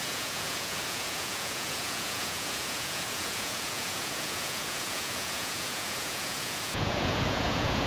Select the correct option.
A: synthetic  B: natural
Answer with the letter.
A